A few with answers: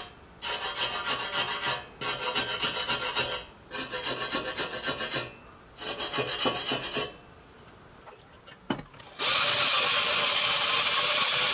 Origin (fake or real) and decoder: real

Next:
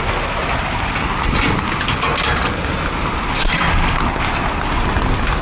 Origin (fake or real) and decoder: real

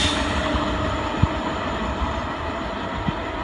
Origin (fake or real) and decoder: real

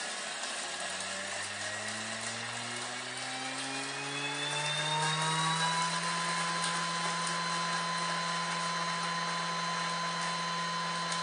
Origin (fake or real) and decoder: real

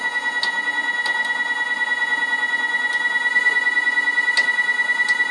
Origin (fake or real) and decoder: real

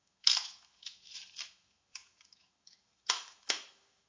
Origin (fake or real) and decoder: fake, autoencoder, DAC-VAE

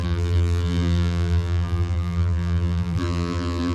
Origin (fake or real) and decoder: fake, vocoder, BigVGAN v2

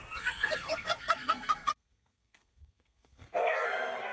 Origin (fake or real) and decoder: fake, codec, SNAC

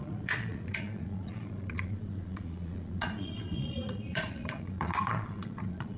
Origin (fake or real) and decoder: fake, vocoder, Vocos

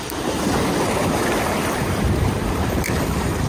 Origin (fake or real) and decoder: fake, vocoder, BigVGAN v2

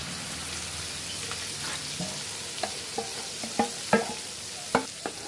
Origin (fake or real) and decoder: real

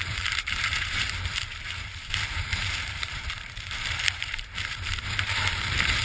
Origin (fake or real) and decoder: fake, vocoder, BigVGAN v2